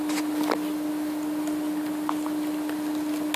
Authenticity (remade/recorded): recorded